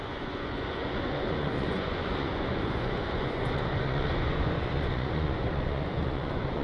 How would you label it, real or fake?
fake